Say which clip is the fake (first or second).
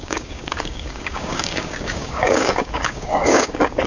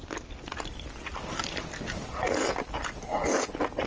first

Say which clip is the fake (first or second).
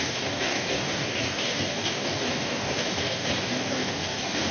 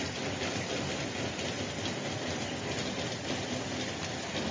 first